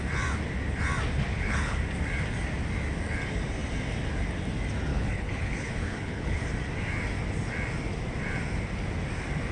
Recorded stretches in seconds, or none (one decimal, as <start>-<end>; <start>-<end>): 0.0-1.3; 1.8-4.9; 6.4-9.5